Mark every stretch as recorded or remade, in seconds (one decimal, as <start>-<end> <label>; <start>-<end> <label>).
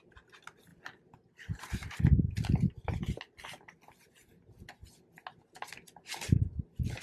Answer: 0.0-7.0 recorded